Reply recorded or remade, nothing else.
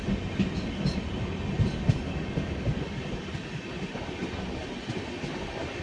recorded